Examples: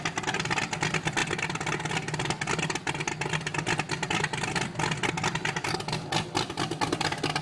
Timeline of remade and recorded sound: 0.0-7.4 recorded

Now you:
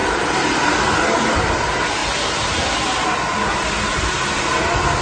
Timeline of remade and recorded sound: 0.0-5.0 recorded

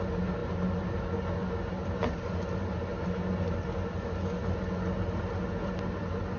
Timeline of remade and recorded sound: 0.0-6.4 recorded

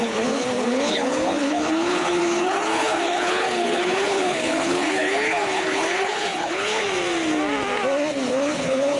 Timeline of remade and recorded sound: 0.0-6.8 remade; 6.8-8.3 recorded; 8.3-9.0 remade

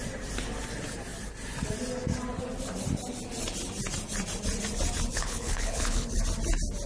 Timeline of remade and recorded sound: 0.0-5.1 recorded; 5.1-6.2 remade; 6.2-6.9 recorded

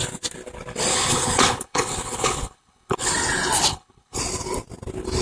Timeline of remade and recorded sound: 0.0-0.9 recorded; 0.9-3.1 remade; 3.1-3.7 recorded; 3.7-4.2 remade; 4.2-5.2 recorded

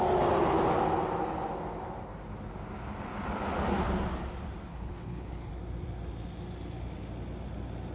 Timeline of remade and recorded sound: 0.0-4.7 recorded; 4.7-5.5 remade; 5.5-7.9 recorded

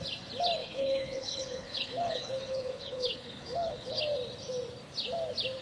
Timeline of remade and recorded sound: 0.0-0.6 recorded; 0.6-4.0 remade; 4.0-5.6 recorded